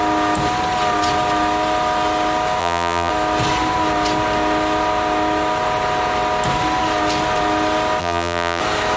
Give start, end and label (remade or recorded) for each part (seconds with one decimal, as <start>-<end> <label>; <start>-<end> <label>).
0.0-2.6 recorded; 2.6-3.1 remade; 3.1-8.0 recorded; 8.0-8.6 remade; 8.6-9.0 recorded